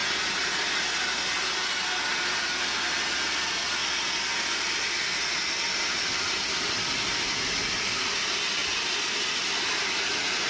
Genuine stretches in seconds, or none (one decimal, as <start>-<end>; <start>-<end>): 0.0-3.1